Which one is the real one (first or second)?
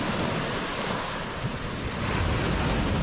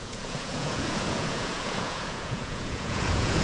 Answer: first